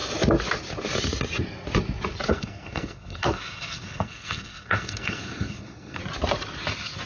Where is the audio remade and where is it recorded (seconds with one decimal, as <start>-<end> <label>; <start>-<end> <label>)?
0.0-2.3 recorded; 2.3-6.0 remade; 6.0-7.1 recorded